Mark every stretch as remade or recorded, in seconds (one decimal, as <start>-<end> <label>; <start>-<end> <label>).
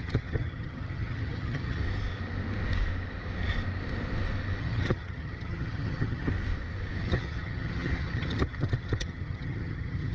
0.0-1.8 remade; 1.8-4.6 recorded; 4.6-6.3 remade; 6.3-7.0 recorded; 7.0-10.1 remade